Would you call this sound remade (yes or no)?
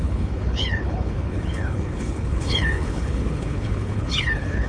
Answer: yes